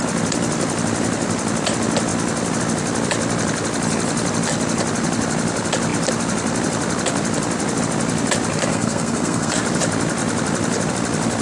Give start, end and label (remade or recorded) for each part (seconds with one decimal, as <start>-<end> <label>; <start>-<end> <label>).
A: 0.0-8.7 recorded; 8.7-9.5 remade; 9.5-11.4 recorded